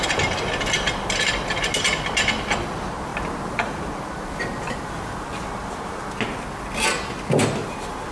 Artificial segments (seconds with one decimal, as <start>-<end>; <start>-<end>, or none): none